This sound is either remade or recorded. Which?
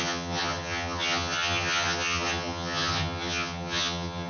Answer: remade